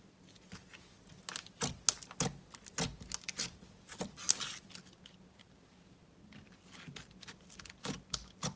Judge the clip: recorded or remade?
recorded